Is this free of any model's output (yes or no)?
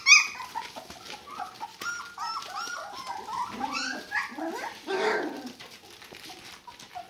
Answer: yes